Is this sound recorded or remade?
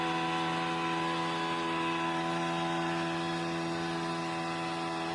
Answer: recorded